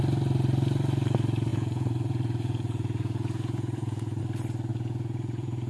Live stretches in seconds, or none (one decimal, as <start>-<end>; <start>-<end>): 0.0-1.5; 4.2-4.7

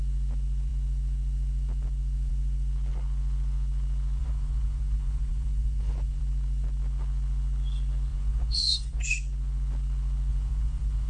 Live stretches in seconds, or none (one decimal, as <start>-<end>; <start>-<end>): 0.0-4.2; 6.2-8.1; 9.1-10.3

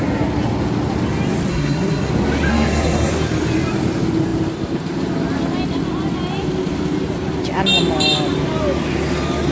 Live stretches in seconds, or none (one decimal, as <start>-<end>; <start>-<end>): 0.0-1.5; 2.1-2.5; 3.1-9.5

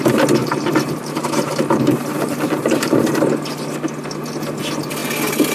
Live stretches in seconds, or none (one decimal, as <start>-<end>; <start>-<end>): 0.0-0.4; 3.1-5.5

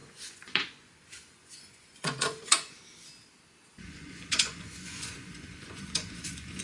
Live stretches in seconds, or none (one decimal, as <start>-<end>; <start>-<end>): 2.8-3.7